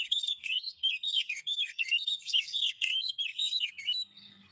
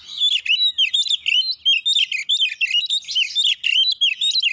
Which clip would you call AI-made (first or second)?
first